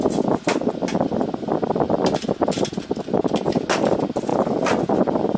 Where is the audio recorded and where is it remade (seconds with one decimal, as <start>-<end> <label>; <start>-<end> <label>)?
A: 0.0-5.4 recorded